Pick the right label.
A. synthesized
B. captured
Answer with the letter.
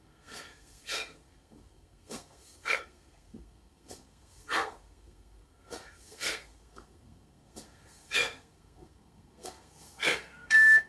A